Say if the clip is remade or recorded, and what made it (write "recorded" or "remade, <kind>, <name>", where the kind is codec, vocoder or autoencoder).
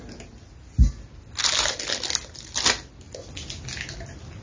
recorded